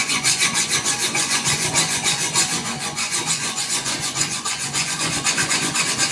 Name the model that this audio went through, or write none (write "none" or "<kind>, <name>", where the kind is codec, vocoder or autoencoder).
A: vocoder, Vocos